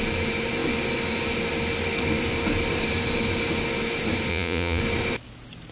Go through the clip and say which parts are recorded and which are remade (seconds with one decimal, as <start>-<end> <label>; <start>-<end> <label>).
0.0-4.3 recorded; 4.3-4.8 remade; 4.8-5.7 recorded

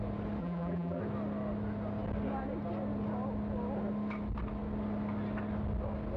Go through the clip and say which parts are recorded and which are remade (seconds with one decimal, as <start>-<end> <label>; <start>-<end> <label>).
0.0-0.4 recorded; 0.4-1.0 remade; 1.0-6.2 recorded

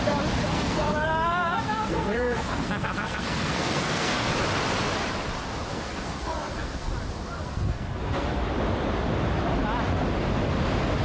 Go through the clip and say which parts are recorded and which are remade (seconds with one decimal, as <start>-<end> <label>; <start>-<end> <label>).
0.0-0.5 recorded; 0.5-4.3 remade; 4.3-5.7 recorded; 5.7-6.9 remade; 6.9-7.4 recorded; 7.4-8.4 remade; 8.4-11.0 recorded